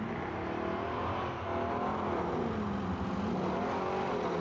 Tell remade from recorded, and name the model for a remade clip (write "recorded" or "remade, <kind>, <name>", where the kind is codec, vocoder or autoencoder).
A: recorded